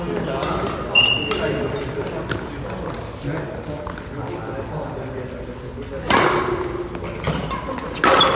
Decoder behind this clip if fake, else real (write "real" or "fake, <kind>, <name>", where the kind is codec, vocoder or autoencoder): real